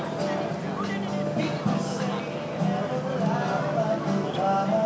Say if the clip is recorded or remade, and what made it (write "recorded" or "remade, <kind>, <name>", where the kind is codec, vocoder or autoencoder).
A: recorded